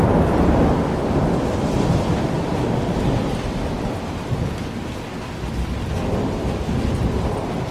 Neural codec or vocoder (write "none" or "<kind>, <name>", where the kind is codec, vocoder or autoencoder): none